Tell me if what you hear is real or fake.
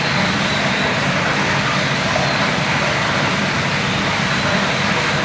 real